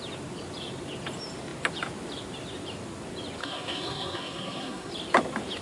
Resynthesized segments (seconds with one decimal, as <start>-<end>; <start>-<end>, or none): 3.4-4.9